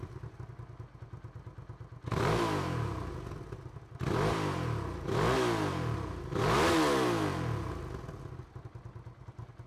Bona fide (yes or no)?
yes